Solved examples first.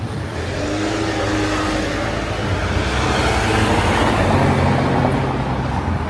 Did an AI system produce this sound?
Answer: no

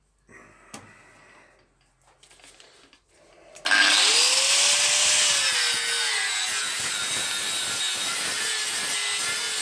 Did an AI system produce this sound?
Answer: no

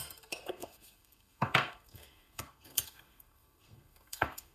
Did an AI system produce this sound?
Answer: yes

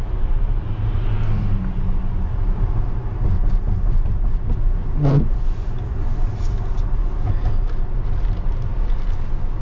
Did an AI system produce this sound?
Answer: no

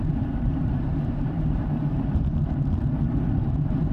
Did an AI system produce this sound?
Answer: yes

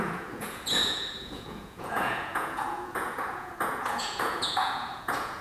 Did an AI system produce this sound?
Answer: yes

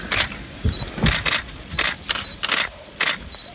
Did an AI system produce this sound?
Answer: no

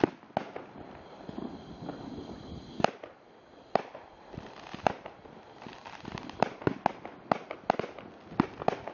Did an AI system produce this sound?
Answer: no